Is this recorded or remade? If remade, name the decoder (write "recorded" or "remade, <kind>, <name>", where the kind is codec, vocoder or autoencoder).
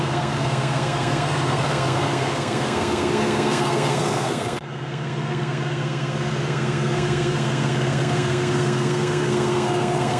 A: remade, codec, SNAC